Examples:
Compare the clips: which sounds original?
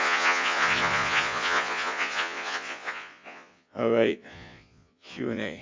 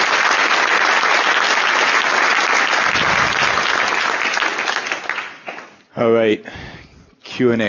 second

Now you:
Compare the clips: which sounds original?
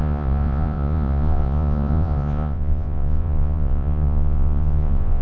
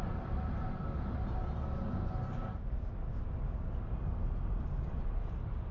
second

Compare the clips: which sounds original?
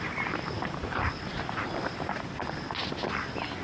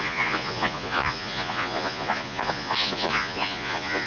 first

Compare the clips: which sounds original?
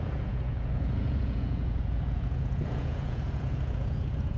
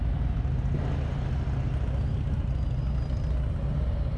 second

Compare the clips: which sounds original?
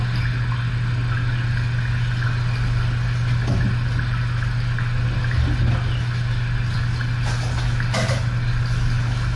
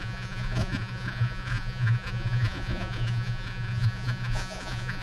first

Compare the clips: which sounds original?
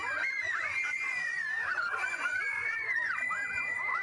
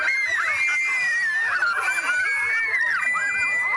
second